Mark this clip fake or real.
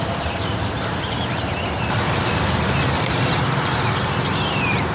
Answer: fake